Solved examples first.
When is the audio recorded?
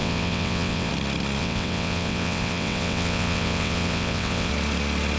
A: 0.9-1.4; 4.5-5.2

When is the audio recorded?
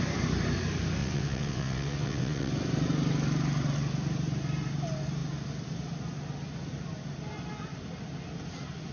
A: 0.0-1.0; 2.5-8.9